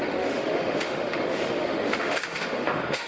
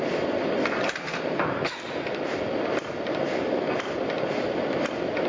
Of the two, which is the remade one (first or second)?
first